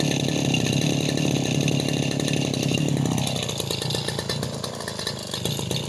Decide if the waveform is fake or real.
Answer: real